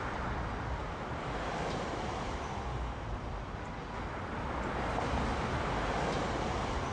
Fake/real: real